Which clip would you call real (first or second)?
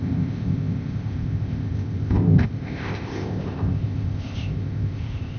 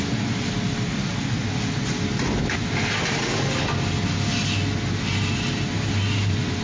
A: second